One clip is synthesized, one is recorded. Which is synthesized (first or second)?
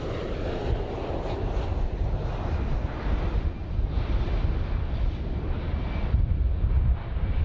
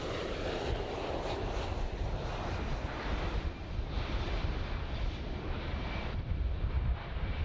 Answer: second